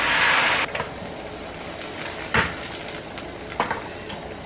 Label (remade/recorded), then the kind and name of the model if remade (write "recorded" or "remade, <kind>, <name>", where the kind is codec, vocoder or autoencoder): recorded